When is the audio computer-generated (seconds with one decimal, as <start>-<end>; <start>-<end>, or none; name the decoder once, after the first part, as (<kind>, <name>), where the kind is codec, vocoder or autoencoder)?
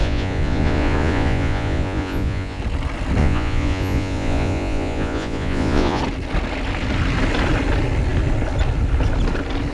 0.0-2.6 (vocoder, Vocos); 3.2-6.0